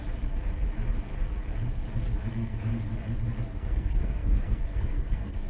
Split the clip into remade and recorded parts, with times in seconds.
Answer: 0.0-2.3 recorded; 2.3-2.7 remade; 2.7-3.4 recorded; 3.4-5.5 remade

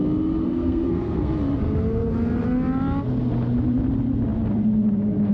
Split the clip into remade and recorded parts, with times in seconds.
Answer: 0.0-0.4 recorded; 0.4-1.3 remade; 1.3-5.3 recorded

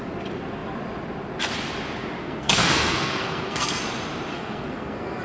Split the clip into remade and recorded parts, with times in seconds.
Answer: 0.0-2.2 recorded; 2.2-3.8 remade; 3.8-4.3 recorded; 4.3-5.2 remade

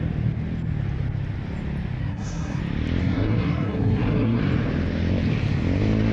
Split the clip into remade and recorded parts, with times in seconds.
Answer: 0.0-2.0 recorded; 2.0-2.6 remade; 2.6-3.0 recorded; 3.0-4.4 remade; 4.4-6.1 recorded

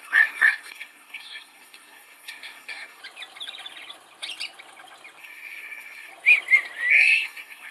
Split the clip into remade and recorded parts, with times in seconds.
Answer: 0.0-3.0 remade; 3.0-5.2 recorded; 5.2-6.1 remade; 6.1-6.9 recorded; 6.9-7.7 remade